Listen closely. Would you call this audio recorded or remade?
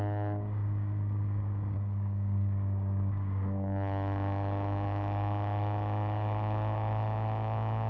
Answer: remade